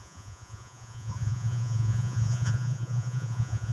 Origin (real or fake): fake